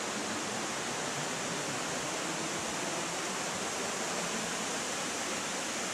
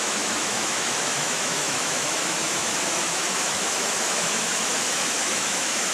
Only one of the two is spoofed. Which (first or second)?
second